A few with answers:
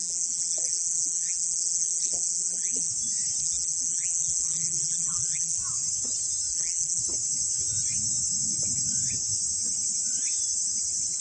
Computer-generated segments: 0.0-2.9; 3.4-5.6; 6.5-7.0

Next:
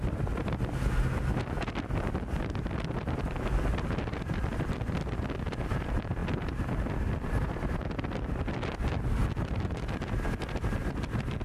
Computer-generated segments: none

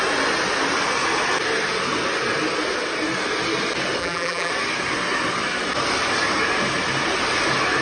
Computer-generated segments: 4.0-4.5

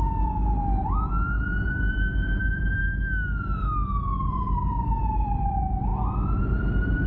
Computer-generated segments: 0.0-2.8; 4.3-5.9; 6.4-7.1

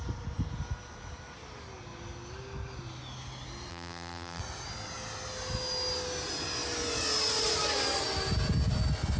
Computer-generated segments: 3.7-4.4

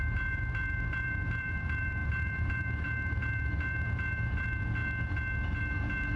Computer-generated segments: 0.0-4.8; 5.6-6.2

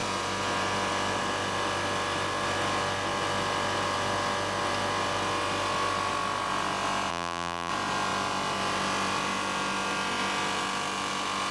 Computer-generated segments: 7.1-7.7